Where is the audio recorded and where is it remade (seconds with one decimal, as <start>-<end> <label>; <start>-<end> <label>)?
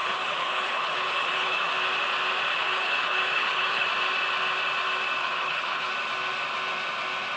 0.0-1.7 remade; 1.7-2.5 recorded; 2.5-3.9 remade; 3.9-5.2 recorded; 5.2-5.9 remade; 5.9-7.4 recorded